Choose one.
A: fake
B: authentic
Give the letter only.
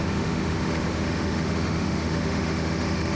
A